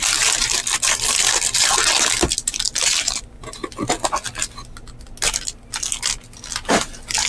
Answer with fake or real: real